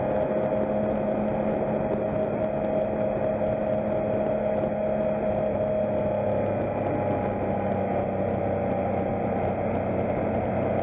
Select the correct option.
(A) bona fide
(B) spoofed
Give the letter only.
A